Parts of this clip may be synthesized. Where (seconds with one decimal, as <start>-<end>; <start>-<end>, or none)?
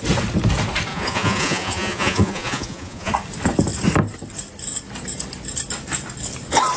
0.9-3.1